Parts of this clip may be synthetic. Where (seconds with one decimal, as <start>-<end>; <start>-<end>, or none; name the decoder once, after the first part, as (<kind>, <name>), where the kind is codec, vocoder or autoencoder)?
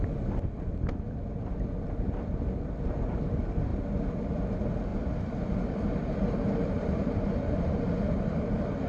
4.9-8.9 (vocoder, BigVGAN v2)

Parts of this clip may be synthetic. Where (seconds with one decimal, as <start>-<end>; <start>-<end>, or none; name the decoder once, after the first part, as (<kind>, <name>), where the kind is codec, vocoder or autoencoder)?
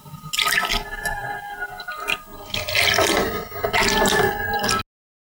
none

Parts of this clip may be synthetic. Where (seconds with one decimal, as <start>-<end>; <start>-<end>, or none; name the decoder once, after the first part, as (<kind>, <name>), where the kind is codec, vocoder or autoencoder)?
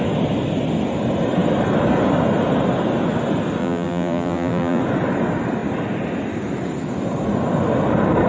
3.6-4.8 (vocoder, BigVGAN v2)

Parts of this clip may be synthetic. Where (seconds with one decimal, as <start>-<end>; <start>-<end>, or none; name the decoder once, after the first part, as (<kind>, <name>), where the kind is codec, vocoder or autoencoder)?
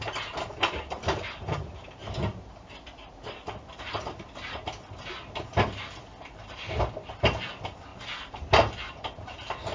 0.0-2.0 (vocoder, BigVGAN v2); 6.9-7.9; 8.9-9.7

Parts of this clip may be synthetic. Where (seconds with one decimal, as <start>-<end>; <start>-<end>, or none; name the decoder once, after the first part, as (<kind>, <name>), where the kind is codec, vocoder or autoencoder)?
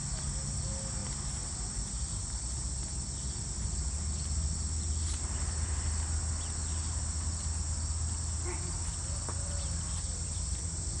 1.0-2.3 (vocoder, BigVGAN v2)